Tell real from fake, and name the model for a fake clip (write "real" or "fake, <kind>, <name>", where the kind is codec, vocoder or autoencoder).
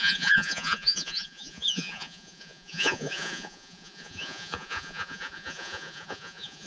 fake, vocoder, Vocos